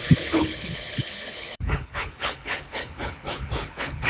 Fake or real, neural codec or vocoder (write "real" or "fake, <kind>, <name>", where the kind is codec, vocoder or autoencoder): fake, codec, HILCodec